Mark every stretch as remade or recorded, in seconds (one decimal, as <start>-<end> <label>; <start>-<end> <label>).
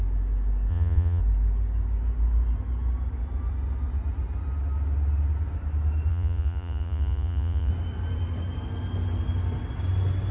0.0-0.7 recorded; 0.7-1.2 remade; 1.2-6.1 recorded; 6.1-7.7 remade; 7.7-10.3 recorded